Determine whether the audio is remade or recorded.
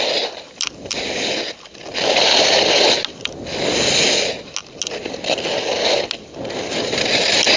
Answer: recorded